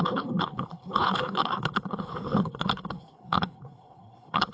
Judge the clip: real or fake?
fake